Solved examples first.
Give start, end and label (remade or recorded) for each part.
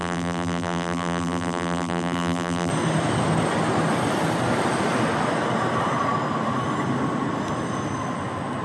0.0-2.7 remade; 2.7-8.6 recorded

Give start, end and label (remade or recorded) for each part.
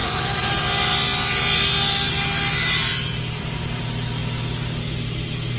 0.0-0.6 remade; 0.6-2.9 recorded; 2.9-3.8 remade; 3.8-5.6 recorded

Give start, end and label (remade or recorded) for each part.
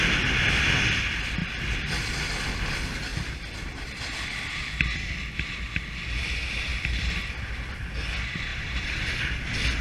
0.0-6.7 recorded; 6.7-7.5 remade; 7.5-8.5 recorded; 8.5-9.1 remade; 9.1-9.8 recorded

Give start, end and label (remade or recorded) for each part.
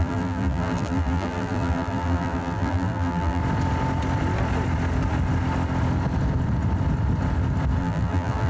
0.0-3.4 remade; 3.4-7.8 recorded; 7.8-8.5 remade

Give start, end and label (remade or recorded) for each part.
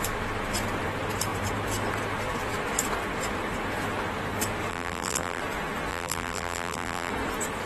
0.0-4.7 recorded; 4.7-5.4 remade; 5.4-5.9 recorded; 5.9-7.1 remade; 7.1-7.7 recorded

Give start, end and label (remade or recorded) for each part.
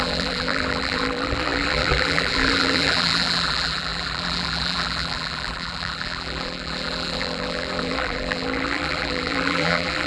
0.0-10.1 remade